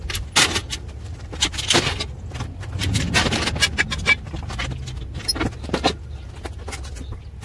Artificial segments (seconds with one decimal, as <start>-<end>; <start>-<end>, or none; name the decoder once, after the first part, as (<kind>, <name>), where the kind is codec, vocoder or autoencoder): none